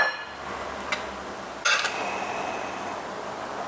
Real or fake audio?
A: real